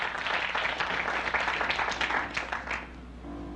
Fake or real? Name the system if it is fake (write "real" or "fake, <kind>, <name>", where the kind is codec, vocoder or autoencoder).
real